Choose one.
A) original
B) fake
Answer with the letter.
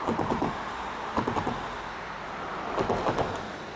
A